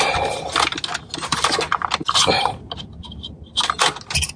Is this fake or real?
real